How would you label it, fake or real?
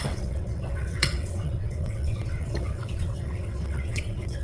fake